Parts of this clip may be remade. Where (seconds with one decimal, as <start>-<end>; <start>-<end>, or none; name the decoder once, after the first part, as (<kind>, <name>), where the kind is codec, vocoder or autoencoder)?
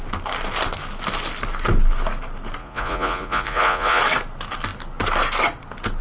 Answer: 2.6-4.0 (vocoder, Vocos)